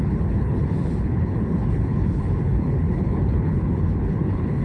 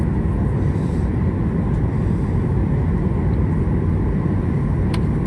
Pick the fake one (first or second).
first